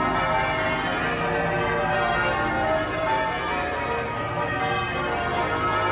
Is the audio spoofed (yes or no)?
no